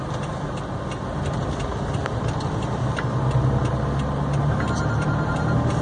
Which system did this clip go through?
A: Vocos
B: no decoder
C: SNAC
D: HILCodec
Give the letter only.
B